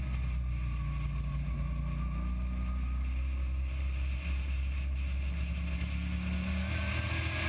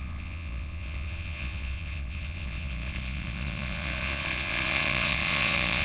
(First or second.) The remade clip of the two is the second